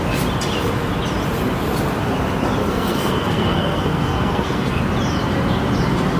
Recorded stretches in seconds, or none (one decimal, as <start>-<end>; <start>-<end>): 0.0-2.6; 4.8-6.2